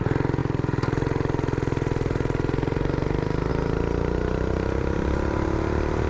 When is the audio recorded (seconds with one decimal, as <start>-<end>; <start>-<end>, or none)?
0.0-6.1